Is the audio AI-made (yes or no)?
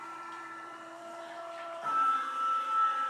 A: yes